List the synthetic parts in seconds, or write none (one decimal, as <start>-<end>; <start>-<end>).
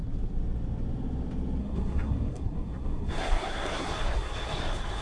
1.6-5.0